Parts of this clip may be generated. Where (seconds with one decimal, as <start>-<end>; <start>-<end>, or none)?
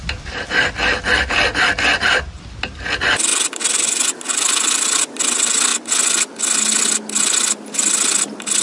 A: 3.3-5.2